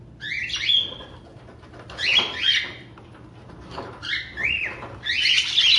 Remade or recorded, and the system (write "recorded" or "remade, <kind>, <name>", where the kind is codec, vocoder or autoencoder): recorded